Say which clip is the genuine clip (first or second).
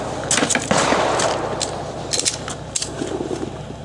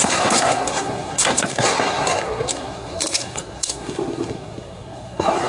first